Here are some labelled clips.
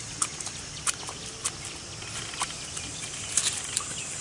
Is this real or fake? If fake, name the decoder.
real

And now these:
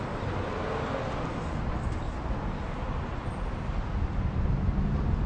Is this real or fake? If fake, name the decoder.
real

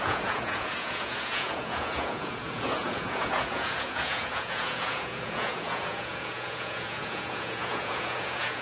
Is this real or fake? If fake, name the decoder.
fake, vocoder, Vocos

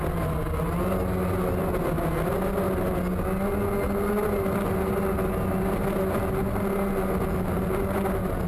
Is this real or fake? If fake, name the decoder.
real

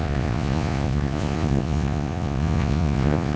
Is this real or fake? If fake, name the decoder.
fake, vocoder, Vocos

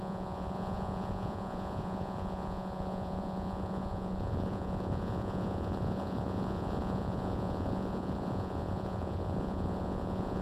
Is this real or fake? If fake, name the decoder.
fake, vocoder, Vocos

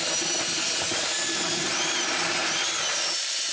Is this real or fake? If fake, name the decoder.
real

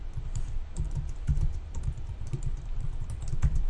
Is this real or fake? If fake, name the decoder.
fake, vocoder, BigVGAN v2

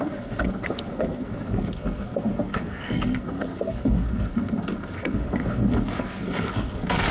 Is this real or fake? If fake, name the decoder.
fake, codec, SNAC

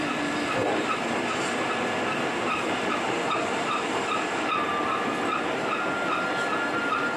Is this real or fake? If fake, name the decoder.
real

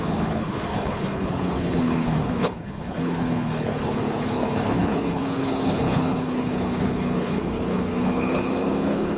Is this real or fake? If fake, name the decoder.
fake, codec, HILCodec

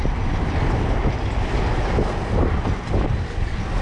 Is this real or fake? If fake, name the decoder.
real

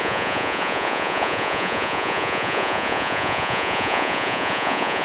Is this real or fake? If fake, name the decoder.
fake, vocoder, Vocos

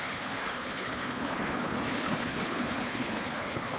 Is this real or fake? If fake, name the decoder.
fake, codec, HILCodec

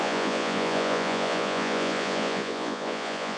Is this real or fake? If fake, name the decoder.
fake, vocoder, Vocos